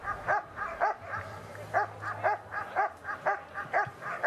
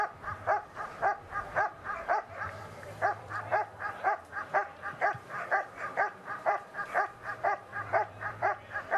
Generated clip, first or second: second